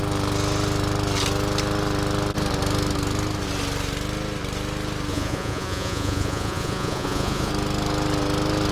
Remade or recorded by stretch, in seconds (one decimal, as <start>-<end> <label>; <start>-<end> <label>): 0.0-5.1 recorded; 5.1-7.5 remade; 7.5-8.7 recorded